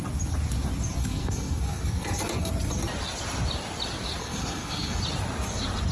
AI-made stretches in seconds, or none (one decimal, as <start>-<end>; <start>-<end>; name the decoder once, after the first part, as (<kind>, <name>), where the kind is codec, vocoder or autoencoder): 1.0-2.5 (codec, SNAC); 4.2-5.0